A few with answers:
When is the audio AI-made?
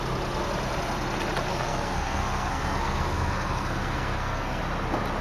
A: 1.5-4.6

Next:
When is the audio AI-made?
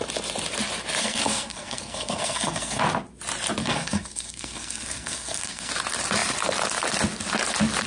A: 1.0-2.8; 3.6-5.7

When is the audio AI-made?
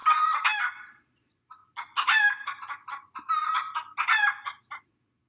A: 0.9-1.6; 4.8-5.3